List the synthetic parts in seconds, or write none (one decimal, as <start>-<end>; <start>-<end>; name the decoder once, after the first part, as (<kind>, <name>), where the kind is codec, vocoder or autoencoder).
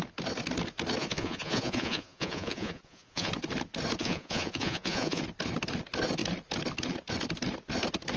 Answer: 1.0-3.3 (vocoder, Vocos); 4.0-5.2